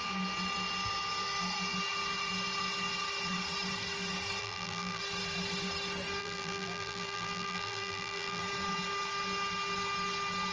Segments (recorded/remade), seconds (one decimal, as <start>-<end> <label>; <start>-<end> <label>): 0.0-4.4 recorded; 4.4-5.0 remade; 5.0-6.2 recorded; 6.2-8.4 remade; 8.4-10.5 recorded

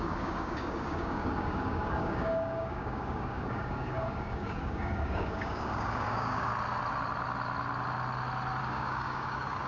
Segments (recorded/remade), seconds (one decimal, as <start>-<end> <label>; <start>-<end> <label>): 0.0-6.5 remade; 6.5-8.6 recorded; 8.6-9.7 remade

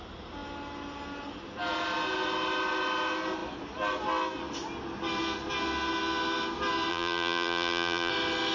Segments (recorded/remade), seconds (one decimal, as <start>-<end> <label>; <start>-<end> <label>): 0.0-6.9 recorded; 6.9-8.1 remade; 8.1-8.5 recorded

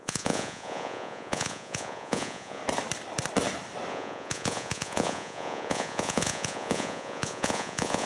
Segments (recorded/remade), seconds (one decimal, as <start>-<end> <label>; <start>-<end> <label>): 0.0-2.6 remade; 2.6-3.9 recorded; 3.9-8.1 remade

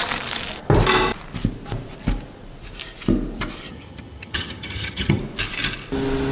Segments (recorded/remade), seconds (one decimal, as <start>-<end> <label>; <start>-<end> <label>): 0.0-3.7 recorded; 3.7-5.2 remade; 5.2-6.3 recorded

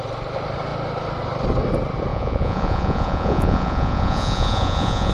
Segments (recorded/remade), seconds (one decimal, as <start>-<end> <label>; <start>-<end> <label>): 0.0-2.1 recorded; 2.1-5.1 remade

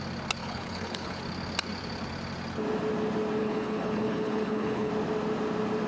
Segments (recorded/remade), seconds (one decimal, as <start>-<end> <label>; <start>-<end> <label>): 0.0-0.4 recorded; 0.4-1.2 remade; 1.2-3.4 recorded; 3.4-4.9 remade; 4.9-5.9 recorded